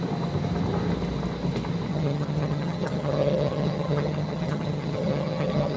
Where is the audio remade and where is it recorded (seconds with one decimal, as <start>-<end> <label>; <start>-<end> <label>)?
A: 0.0-1.9 recorded; 1.9-5.8 remade